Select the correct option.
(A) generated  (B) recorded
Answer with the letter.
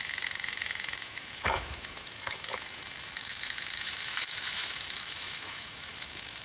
A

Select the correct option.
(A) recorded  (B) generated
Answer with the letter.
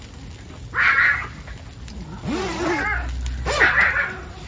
A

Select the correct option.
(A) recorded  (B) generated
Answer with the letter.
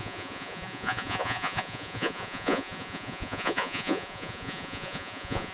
B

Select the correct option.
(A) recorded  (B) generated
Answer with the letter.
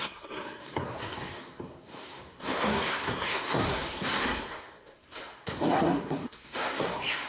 B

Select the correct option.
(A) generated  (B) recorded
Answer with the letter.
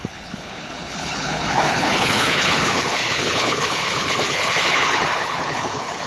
A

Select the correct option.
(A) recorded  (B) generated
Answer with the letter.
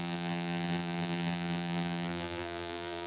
B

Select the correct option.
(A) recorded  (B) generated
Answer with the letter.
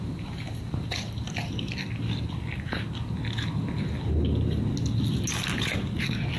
A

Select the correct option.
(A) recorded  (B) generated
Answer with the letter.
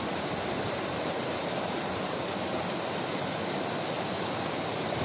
A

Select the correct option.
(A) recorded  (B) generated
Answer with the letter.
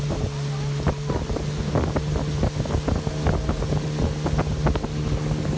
A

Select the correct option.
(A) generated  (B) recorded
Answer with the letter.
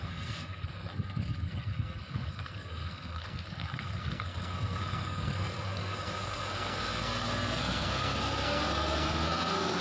A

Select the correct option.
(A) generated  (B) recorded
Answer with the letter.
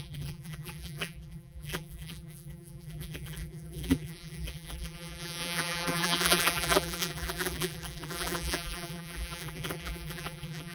A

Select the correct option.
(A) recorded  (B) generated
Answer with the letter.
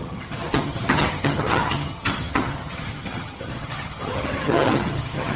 B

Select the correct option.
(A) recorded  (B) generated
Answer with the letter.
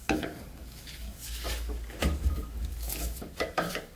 B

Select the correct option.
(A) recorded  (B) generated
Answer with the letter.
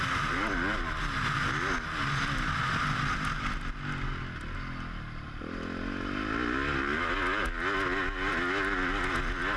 A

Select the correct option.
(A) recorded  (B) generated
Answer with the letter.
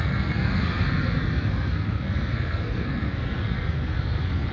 B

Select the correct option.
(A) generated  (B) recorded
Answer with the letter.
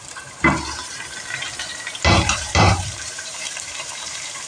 A